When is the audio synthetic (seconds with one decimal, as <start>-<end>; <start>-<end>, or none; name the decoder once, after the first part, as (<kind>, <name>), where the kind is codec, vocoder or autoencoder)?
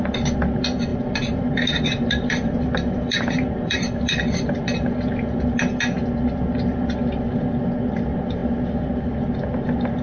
0.9-5.8 (vocoder, BigVGAN v2)